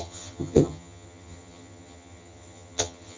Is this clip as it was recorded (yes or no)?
no